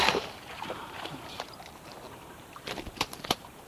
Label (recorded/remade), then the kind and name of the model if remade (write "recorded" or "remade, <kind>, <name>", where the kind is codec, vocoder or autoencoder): remade, vocoder, BigVGAN v2